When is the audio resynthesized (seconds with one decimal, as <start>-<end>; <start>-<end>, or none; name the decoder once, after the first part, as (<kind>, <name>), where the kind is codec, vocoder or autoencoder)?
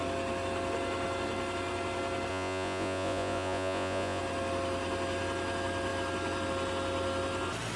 2.3-4.2 (vocoder, Vocos)